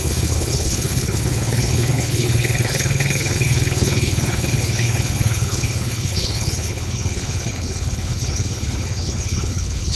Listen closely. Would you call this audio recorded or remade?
remade